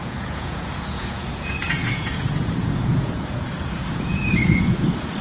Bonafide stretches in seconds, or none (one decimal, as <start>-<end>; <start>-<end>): none